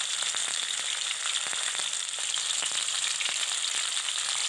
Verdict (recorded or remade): remade